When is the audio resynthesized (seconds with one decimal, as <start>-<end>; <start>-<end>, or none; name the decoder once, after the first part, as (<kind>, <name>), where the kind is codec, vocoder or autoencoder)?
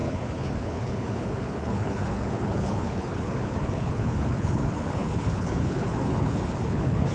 0.0-7.1 (codec, HILCodec)